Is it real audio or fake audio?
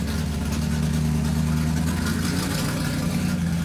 real